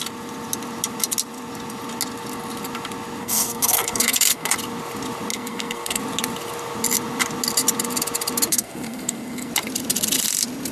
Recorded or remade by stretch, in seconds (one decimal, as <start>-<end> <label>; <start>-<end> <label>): 0.0-3.2 recorded; 3.2-4.5 remade; 4.5-5.3 recorded; 5.3-6.0 remade; 6.0-8.5 recorded; 8.5-9.5 remade; 9.5-10.7 recorded